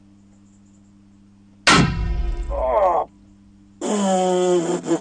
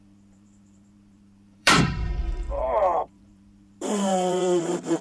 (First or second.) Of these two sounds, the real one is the first